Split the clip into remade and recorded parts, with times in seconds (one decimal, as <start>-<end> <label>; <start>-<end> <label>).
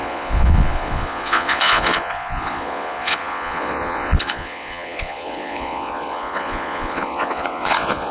0.0-8.1 remade